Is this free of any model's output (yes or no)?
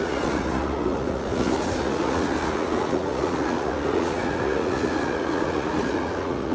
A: no